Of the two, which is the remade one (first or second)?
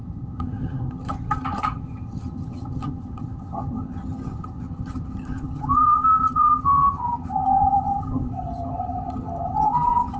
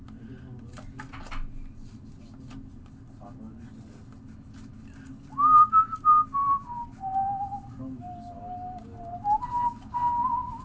first